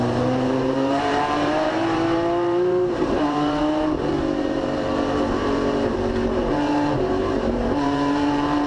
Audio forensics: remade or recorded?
remade